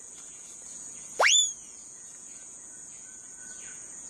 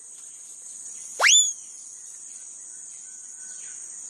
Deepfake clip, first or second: first